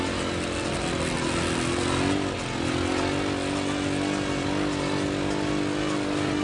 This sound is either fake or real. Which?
real